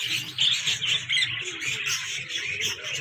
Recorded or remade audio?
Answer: recorded